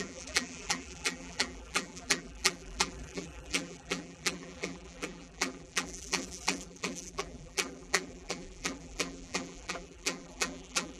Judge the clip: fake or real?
fake